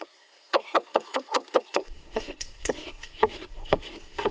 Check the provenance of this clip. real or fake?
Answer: fake